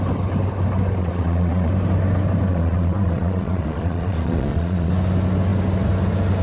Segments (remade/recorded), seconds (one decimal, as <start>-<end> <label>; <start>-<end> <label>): 0.0-1.0 recorded; 1.0-1.7 remade; 1.7-2.5 recorded; 2.5-4.9 remade; 4.9-6.4 recorded